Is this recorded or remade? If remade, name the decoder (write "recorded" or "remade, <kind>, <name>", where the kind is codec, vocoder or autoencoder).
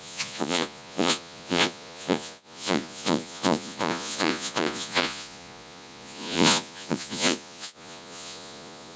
remade, vocoder, Vocos